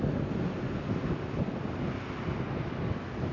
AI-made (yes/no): no